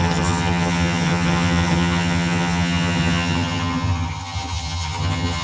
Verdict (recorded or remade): remade